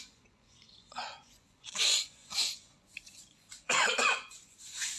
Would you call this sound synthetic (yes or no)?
yes